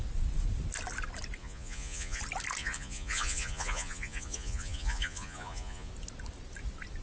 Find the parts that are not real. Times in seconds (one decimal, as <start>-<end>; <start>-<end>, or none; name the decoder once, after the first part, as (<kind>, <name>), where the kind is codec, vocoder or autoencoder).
1.4-2.2 (vocoder, Vocos); 2.6-5.9